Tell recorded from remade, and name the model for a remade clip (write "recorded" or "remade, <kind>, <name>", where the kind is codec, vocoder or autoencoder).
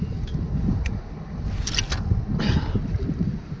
recorded